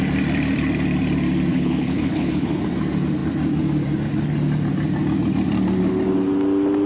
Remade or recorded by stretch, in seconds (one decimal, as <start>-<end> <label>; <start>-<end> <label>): 0.0-1.5 recorded; 1.5-2.5 remade; 2.5-6.9 recorded